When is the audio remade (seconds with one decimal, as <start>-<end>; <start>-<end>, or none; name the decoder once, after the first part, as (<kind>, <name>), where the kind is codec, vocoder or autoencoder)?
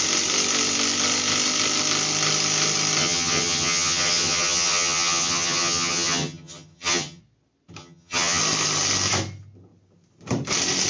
3.0-7.2 (vocoder, HiFi-GAN); 7.8-8.4